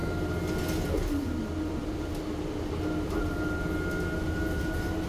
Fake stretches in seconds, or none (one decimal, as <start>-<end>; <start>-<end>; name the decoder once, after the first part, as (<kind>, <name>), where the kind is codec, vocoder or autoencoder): none